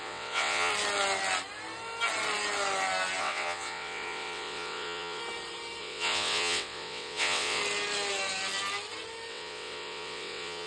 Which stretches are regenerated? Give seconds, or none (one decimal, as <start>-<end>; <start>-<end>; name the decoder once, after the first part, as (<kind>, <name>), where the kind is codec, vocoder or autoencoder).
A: 0.0-0.7 (vocoder, WaveNeXt); 3.2-5.2; 5.8-7.6; 9.3-10.7